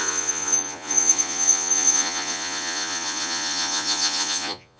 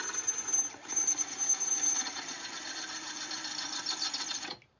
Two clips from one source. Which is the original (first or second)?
second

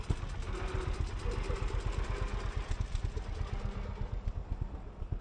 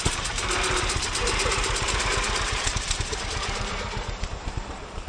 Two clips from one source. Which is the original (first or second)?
first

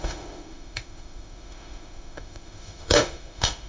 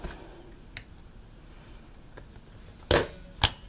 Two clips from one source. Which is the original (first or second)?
second